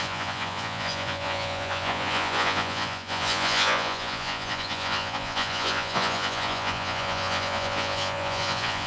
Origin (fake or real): fake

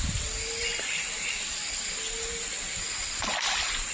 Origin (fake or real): real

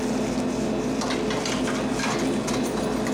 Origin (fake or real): real